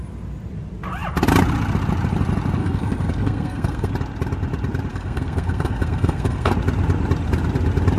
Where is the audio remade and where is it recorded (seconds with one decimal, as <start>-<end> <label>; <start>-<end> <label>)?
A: 0.0-2.6 recorded; 2.6-3.9 remade; 3.9-4.9 recorded; 4.9-6.5 remade; 6.5-8.0 recorded